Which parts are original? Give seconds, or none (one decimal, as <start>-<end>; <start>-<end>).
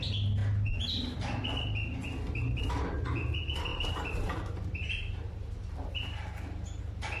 0.0-3.7; 6.8-7.2